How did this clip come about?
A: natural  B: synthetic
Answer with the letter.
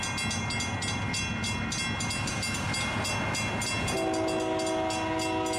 A